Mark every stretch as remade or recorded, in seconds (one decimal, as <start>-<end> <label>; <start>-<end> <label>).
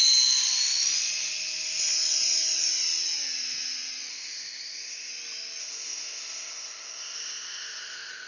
0.0-4.1 recorded; 4.1-5.1 remade; 5.1-5.6 recorded; 5.6-8.3 remade